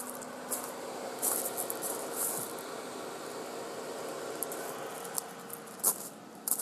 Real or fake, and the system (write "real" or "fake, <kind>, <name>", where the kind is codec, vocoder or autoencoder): real